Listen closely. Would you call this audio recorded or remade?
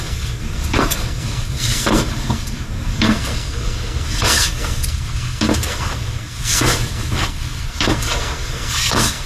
remade